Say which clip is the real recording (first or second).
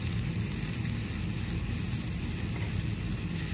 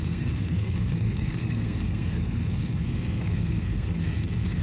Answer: first